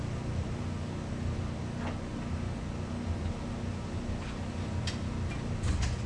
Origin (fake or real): real